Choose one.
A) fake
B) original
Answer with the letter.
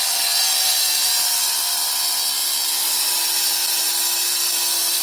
B